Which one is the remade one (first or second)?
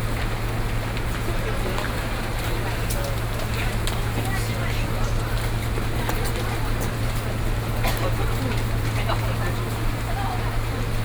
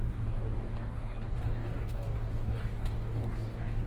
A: second